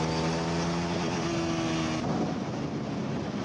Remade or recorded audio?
recorded